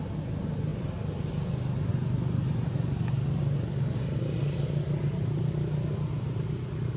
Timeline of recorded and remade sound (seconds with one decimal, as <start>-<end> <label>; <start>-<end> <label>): 0.0-7.0 recorded